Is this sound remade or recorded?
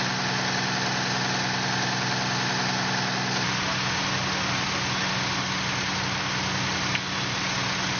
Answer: recorded